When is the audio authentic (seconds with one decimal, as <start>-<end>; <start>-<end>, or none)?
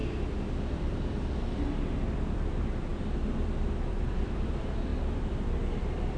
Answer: 0.0-1.6